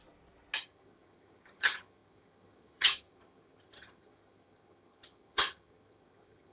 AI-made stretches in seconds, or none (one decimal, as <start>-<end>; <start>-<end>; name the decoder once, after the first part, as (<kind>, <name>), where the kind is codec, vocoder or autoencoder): 0.6-6.5 (vocoder, HiFi-GAN)